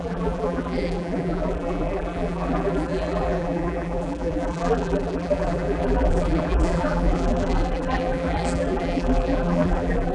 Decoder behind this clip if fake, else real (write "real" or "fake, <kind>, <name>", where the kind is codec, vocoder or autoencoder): fake, vocoder, BigVGAN v2